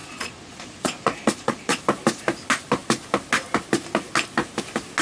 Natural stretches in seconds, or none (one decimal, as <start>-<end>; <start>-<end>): 1.8-5.0